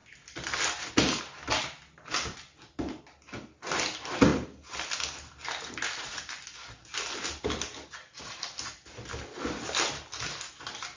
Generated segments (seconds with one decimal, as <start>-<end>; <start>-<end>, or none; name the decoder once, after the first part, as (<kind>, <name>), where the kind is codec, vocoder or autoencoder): none